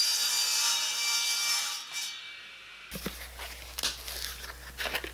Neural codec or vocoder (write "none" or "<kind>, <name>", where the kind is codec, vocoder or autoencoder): none